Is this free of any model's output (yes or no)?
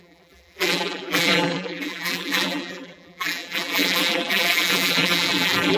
no